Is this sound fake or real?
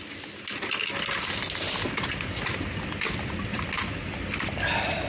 real